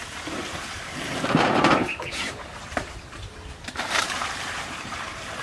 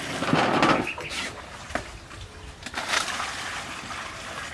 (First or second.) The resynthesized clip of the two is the first